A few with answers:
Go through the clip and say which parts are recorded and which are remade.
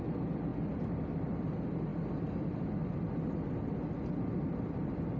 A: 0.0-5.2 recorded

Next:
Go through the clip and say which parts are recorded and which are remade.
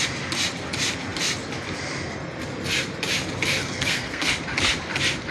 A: 0.0-3.6 recorded; 3.6-4.3 remade; 4.3-5.3 recorded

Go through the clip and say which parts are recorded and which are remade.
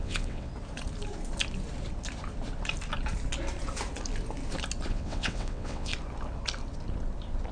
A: 0.0-0.5 remade; 0.5-4.9 recorded; 4.9-5.9 remade; 5.9-7.5 recorded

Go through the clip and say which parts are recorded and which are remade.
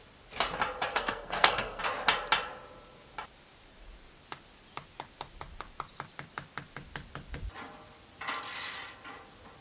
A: 0.0-0.9 recorded; 0.9-1.8 remade; 1.8-9.6 recorded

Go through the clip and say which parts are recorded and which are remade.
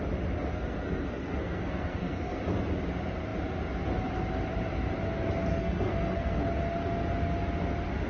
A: 0.0-0.5 recorded; 0.5-2.4 remade; 2.4-5.5 recorded; 5.5-6.4 remade; 6.4-8.1 recorded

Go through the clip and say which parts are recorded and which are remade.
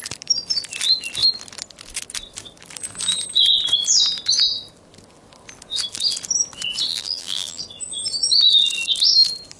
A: 0.0-6.9 recorded; 6.9-7.6 remade; 7.6-9.6 recorded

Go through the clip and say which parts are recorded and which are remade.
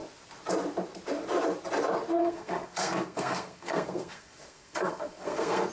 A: 0.0-2.2 recorded; 2.2-5.7 remade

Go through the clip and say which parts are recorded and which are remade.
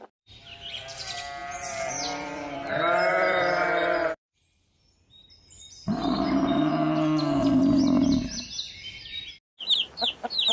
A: 0.0-1.4 recorded; 1.4-2.7 remade; 2.7-3.1 recorded; 3.1-5.1 remade; 5.1-6.0 recorded; 6.0-6.7 remade; 6.7-10.5 recorded